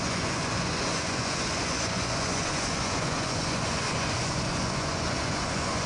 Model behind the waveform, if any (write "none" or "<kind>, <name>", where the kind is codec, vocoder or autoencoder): vocoder, Vocos